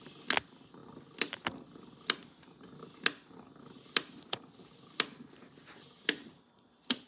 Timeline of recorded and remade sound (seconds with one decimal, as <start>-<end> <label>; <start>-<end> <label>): 0.0-7.1 recorded